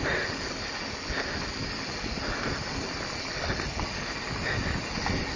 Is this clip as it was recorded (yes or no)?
yes